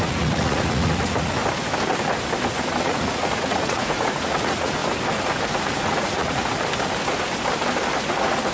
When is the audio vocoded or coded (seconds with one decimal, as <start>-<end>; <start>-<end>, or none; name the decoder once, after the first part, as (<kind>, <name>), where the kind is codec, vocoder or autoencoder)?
0.0-1.4 (vocoder, Vocos); 2.8-4.8; 5.5-6.4; 8.1-8.5